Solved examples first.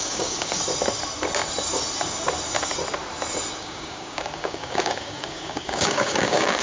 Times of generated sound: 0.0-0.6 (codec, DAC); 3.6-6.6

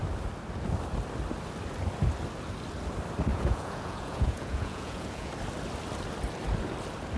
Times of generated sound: 3.3-5.3 (vocoder, Vocos)

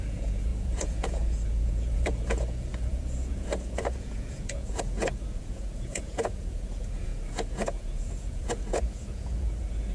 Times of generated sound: 0.0-9.9 (vocoder, Vocos)

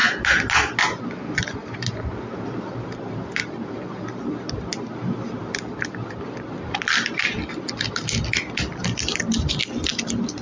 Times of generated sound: none

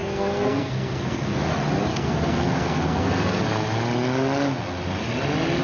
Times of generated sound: 0.0-1.5 (codec, SNAC); 1.9-3.4

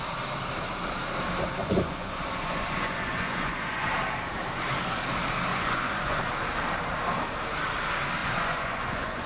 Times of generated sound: 1.6-3.9 (vocoder, Vocos); 5.5-6.2; 8.2-9.3

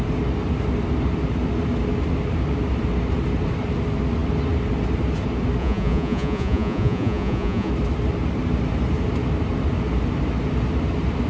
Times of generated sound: 5.6-7.7 (vocoder, Vocos)